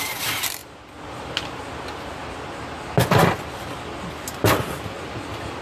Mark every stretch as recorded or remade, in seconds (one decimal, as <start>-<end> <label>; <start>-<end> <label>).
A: 0.0-5.6 recorded